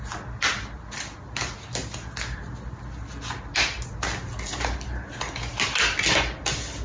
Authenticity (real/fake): real